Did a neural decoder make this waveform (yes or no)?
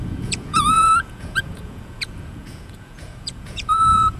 yes